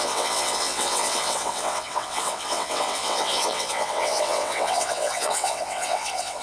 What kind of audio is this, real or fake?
fake